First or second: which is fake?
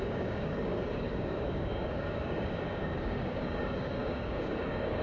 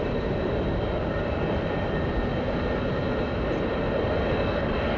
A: first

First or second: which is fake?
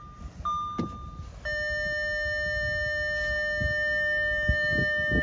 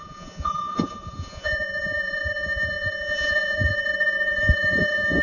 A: second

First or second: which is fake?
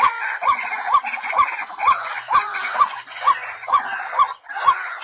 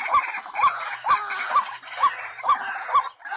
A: first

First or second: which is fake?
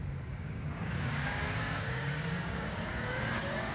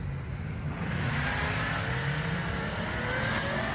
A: first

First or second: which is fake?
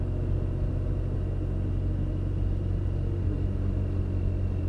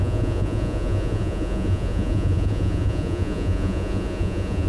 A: second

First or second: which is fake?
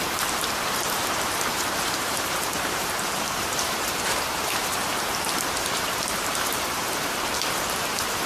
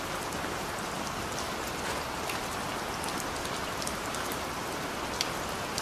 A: first